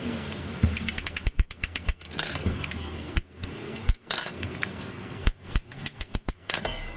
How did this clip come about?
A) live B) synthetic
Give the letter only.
B